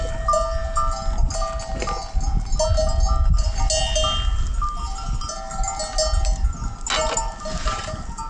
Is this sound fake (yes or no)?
no